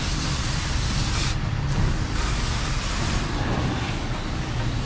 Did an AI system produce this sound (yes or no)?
no